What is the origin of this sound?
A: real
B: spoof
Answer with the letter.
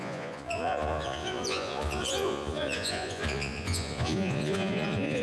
B